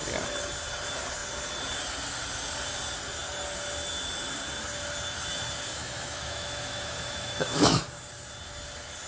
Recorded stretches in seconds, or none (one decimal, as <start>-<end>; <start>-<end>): 0.0-5.8; 7.8-9.1